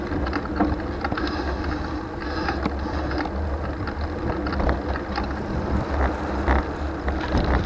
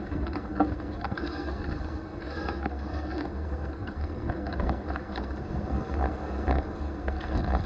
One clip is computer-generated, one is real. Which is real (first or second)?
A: first